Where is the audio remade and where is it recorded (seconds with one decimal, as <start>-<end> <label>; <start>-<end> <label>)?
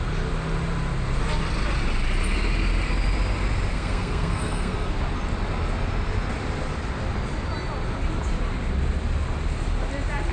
0.0-3.7 recorded; 3.7-5.0 remade; 5.0-10.3 recorded